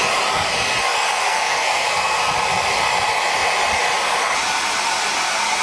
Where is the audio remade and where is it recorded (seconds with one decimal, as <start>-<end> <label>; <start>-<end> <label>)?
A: 0.0-1.2 recorded; 1.2-2.2 remade; 2.2-5.6 recorded